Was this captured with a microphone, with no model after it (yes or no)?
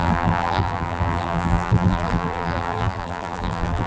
no